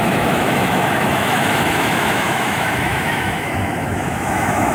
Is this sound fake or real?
fake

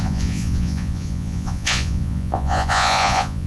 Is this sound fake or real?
fake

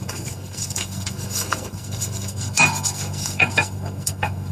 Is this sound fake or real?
fake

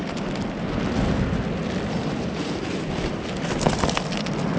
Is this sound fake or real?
real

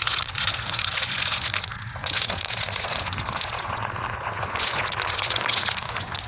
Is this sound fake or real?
fake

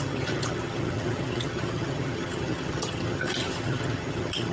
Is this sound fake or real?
fake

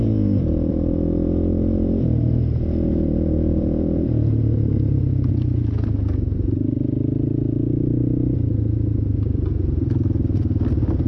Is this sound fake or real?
real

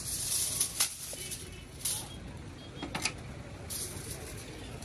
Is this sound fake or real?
real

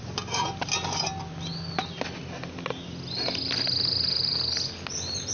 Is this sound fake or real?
real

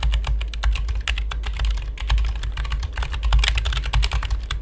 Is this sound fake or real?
real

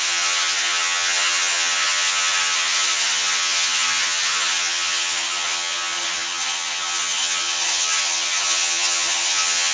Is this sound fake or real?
fake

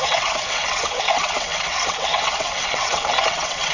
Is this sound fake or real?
fake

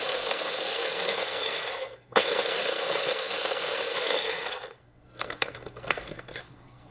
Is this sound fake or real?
fake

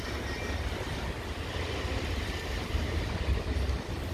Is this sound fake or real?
real